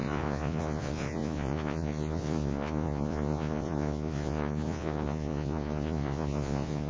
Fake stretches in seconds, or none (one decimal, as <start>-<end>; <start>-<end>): 0.0-6.9